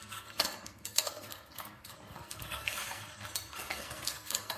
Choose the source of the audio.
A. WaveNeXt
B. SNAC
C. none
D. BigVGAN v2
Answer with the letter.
B